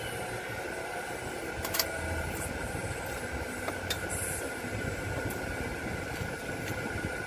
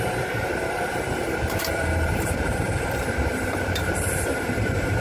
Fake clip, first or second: second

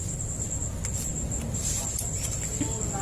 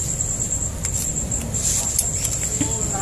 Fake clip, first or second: second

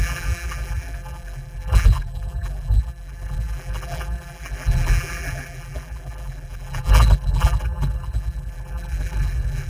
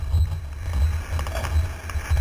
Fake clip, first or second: first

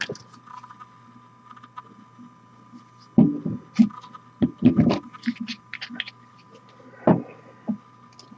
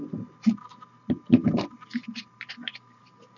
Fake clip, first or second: second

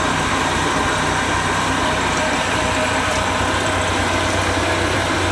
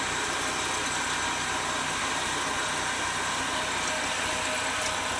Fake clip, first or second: first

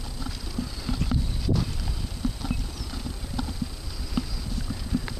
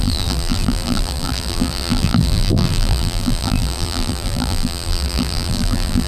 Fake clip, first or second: second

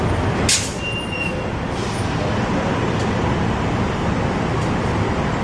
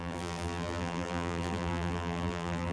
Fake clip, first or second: second